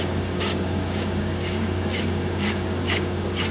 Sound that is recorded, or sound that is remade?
remade